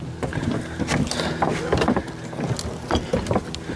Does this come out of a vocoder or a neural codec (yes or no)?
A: no